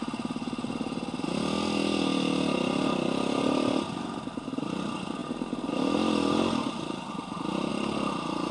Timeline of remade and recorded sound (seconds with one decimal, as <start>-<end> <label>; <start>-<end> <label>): 0.0-8.5 recorded